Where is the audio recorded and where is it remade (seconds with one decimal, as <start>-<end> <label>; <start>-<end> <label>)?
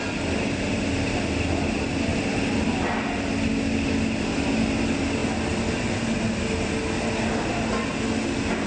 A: 0.0-8.7 recorded